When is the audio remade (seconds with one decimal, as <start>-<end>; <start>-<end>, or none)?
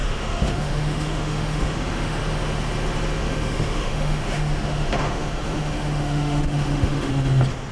0.0-2.2; 3.2-7.1